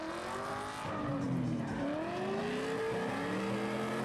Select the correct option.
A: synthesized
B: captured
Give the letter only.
B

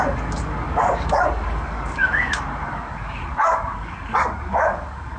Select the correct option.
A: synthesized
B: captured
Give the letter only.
A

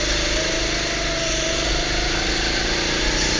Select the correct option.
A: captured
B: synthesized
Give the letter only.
A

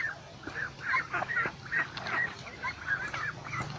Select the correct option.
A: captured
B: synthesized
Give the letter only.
A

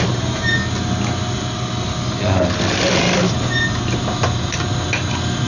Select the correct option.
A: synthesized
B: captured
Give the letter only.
B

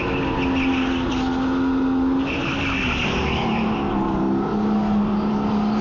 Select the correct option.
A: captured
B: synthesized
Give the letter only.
A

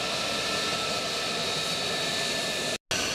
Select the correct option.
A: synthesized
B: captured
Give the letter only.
B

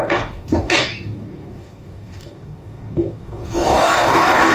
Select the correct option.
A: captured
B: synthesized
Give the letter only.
B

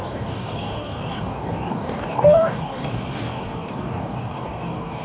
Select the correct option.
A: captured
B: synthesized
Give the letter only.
B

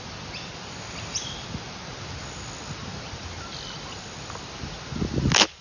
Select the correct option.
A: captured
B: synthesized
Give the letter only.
A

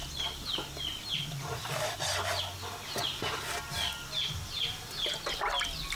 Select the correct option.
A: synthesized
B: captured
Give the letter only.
B